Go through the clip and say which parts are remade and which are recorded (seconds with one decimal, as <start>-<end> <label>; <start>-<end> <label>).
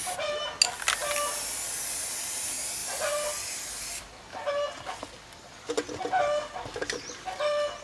0.0-7.8 recorded